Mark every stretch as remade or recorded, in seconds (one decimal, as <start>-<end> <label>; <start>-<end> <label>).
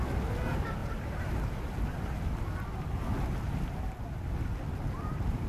0.0-0.8 recorded; 0.8-2.2 remade; 2.2-5.5 recorded